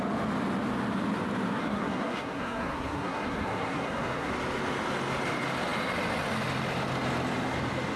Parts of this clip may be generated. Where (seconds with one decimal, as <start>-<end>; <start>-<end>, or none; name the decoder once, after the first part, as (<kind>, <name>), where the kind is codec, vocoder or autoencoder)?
1.6-4.3 (codec, SNAC)